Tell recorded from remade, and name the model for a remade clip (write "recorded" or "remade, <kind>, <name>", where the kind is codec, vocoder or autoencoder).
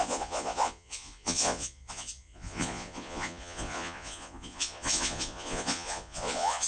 remade, vocoder, Vocos